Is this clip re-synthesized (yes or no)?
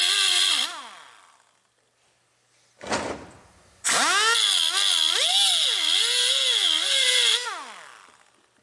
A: no